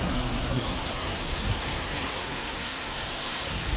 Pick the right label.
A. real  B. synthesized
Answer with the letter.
B